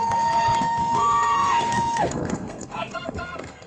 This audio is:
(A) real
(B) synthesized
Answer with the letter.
B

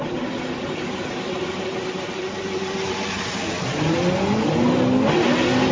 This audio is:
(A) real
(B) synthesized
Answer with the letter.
A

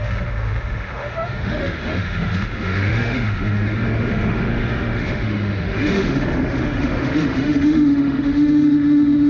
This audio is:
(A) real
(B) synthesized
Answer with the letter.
B